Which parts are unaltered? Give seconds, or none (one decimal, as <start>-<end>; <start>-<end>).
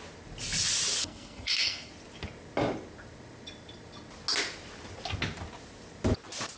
0.0-1.0; 1.9-6.6